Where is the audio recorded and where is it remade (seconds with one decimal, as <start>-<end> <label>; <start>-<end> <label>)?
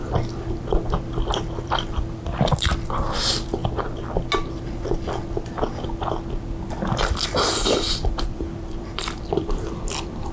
0.0-1.9 recorded; 1.9-3.6 remade; 3.6-6.7 recorded; 6.7-10.3 remade